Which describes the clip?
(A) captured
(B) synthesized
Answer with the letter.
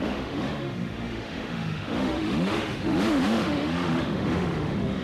B